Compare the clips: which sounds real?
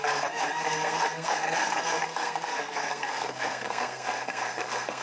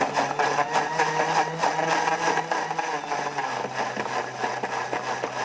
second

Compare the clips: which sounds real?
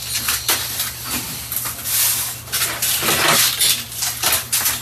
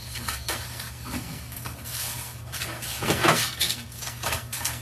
first